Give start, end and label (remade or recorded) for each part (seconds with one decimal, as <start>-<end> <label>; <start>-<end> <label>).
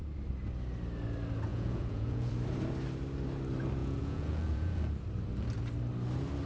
0.0-1.5 recorded; 1.5-2.3 remade; 2.3-3.8 recorded; 3.8-4.8 remade; 4.8-6.5 recorded